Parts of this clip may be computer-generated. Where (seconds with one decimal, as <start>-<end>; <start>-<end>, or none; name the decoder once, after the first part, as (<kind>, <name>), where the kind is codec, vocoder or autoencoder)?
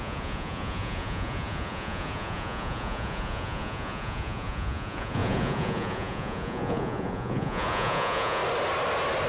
0.0-8.4 (vocoder, Vocos)